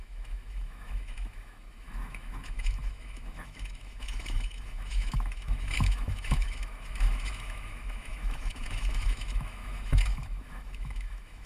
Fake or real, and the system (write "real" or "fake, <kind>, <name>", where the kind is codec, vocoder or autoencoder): fake, autoencoder, DAC-VAE